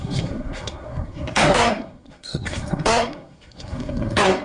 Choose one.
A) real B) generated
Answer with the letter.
B